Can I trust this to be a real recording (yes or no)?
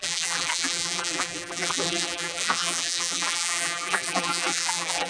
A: no